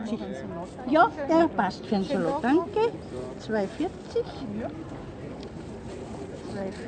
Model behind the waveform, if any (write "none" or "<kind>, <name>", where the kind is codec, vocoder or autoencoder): none